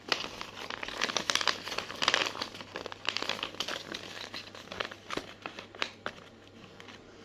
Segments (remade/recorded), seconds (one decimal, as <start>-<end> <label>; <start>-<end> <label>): 0.0-7.2 recorded